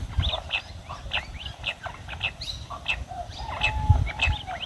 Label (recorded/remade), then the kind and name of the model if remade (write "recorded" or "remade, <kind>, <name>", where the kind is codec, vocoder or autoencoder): recorded